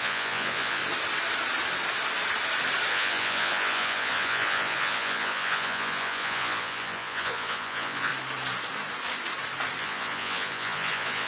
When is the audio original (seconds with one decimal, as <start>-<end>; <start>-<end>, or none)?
0.8-2.9; 8.1-9.8

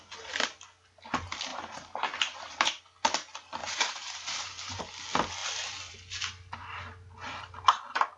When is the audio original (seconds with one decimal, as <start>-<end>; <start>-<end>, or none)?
0.0-1.5; 2.8-3.6; 4.8-8.2